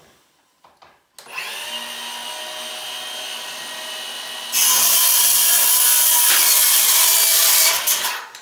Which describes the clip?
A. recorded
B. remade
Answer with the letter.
A